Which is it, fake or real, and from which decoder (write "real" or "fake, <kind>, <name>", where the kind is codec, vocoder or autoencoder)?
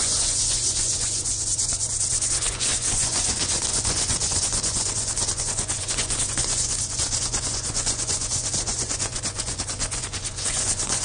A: fake, vocoder, Vocos